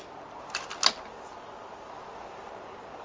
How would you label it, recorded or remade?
recorded